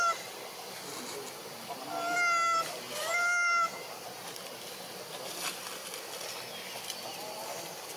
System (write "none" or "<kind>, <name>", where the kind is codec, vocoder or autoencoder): none